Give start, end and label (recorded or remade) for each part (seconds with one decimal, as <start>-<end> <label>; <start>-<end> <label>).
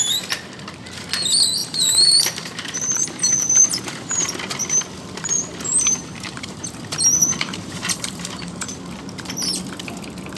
0.0-1.6 recorded; 1.6-4.1 remade; 4.1-6.0 recorded; 6.0-6.8 remade; 6.8-7.2 recorded; 7.2-8.8 remade; 8.8-10.4 recorded